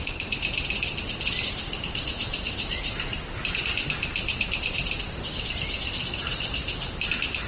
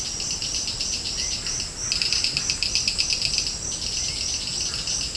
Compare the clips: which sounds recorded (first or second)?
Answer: second